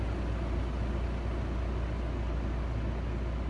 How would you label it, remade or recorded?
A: recorded